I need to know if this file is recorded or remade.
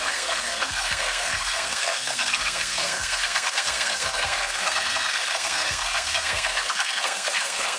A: remade